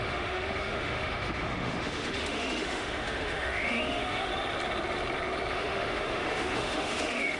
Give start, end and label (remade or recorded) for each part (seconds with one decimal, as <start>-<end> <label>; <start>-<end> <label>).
0.0-4.3 remade; 4.3-5.5 recorded; 5.5-7.4 remade

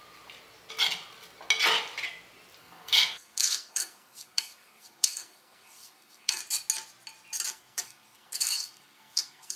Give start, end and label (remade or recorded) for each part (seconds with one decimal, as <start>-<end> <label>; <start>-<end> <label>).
0.0-2.6 recorded; 2.6-6.4 remade; 6.4-7.5 recorded; 7.5-9.6 remade

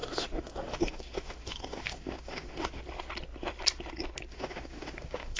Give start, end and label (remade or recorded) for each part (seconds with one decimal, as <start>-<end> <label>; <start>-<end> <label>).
0.0-2.8 remade; 2.8-4.3 recorded; 4.3-5.4 remade